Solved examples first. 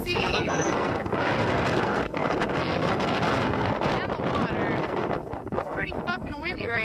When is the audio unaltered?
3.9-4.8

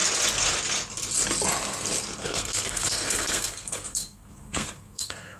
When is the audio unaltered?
0.0-2.2

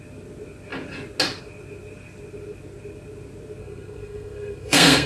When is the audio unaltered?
0.0-3.6

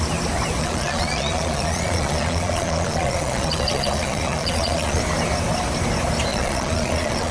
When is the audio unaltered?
0.0-0.6; 5.0-6.3

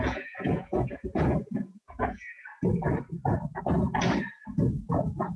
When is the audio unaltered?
2.5-4.3

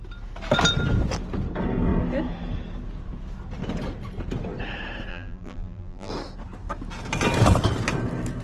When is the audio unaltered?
0.0-5.1; 6.1-8.4

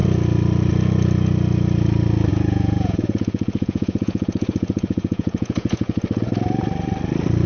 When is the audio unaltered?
0.0-2.3; 6.0-7.5

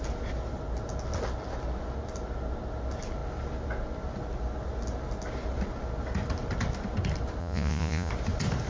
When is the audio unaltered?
0.0-7.4; 8.1-8.7